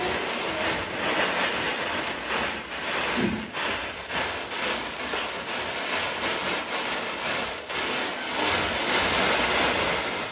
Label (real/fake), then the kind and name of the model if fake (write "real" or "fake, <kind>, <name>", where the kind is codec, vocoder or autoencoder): real